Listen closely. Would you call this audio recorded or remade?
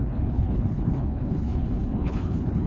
remade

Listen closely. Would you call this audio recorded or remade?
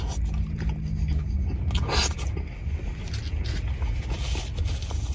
recorded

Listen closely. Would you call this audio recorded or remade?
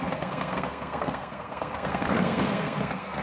remade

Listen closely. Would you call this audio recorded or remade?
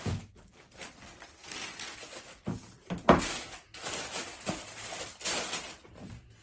recorded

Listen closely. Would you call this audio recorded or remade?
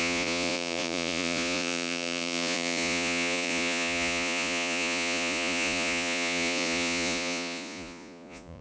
remade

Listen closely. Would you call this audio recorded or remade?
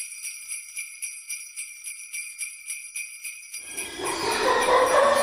recorded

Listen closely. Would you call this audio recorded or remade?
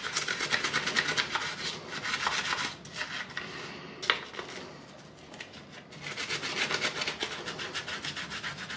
recorded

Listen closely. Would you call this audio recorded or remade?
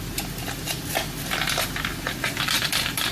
recorded